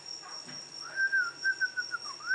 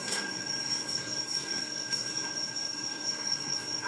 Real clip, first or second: first